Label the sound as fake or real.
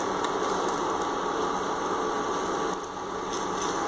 real